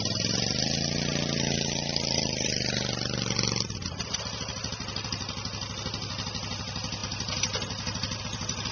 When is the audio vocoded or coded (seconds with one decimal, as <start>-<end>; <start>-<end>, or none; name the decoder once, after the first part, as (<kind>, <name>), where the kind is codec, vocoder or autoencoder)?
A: none